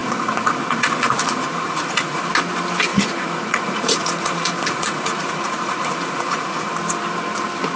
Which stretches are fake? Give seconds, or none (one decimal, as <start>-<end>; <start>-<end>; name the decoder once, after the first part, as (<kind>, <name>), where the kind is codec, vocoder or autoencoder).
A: 0.0-2.3 (vocoder, Vocos); 2.9-6.7